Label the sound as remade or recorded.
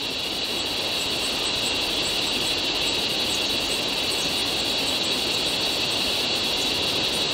remade